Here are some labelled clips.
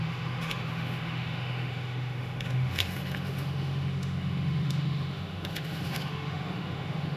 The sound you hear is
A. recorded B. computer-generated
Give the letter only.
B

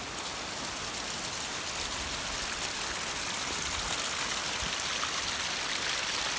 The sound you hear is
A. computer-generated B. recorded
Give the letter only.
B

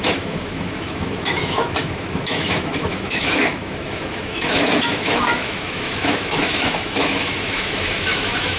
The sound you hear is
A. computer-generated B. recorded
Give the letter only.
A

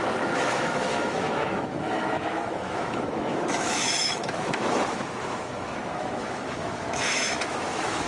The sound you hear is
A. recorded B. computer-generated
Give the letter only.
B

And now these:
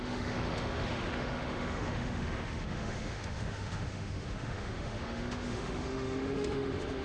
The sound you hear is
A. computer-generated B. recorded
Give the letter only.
A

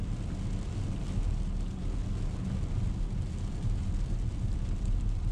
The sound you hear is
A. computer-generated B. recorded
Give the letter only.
B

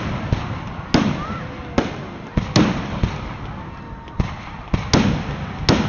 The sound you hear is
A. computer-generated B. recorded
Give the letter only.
B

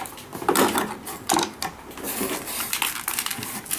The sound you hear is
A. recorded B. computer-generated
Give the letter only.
A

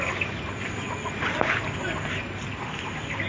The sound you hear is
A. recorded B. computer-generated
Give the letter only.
A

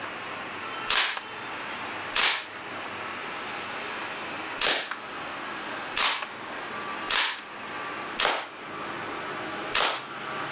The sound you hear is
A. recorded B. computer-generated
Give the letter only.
A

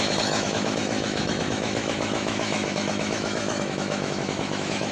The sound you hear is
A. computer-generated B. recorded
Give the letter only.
A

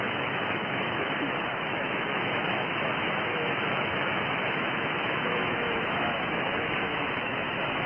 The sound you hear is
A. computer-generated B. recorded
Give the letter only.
A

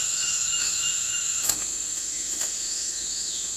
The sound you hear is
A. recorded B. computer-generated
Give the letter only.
B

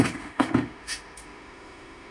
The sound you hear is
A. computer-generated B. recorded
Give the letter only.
A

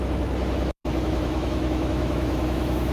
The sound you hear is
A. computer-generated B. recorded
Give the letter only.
A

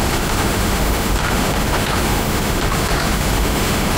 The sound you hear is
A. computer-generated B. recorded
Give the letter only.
A